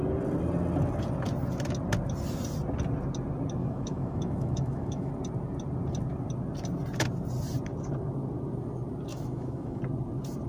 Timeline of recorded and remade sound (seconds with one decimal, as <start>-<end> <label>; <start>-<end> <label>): 0.0-3.6 recorded; 3.6-5.1 remade; 5.1-9.1 recorded; 9.1-9.8 remade; 9.8-10.5 recorded